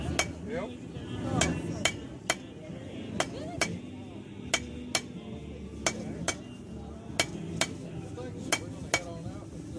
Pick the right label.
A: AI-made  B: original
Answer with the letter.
B